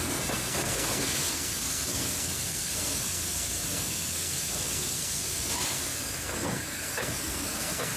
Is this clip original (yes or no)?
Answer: no